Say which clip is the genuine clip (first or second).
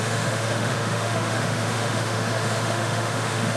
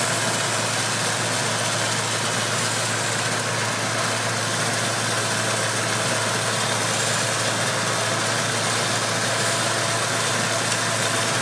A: second